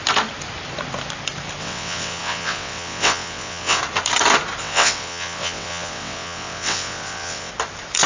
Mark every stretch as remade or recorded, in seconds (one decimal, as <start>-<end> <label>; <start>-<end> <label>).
0.0-1.6 recorded; 1.6-3.8 remade; 3.8-4.6 recorded; 4.6-7.5 remade; 7.5-8.1 recorded